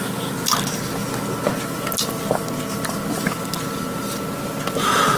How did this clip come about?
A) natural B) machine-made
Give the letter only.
A